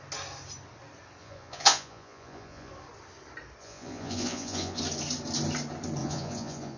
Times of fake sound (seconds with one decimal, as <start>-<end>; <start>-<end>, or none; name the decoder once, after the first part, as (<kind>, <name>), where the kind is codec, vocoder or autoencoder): 1.2-2.7 (vocoder, Vocos); 3.6-4.8; 6.0-6.8